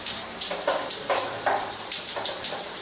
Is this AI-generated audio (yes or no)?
yes